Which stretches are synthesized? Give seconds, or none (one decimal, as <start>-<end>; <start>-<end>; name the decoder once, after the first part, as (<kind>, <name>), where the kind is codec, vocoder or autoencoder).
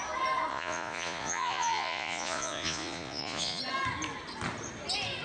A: 0.5-3.6 (vocoder, Vocos)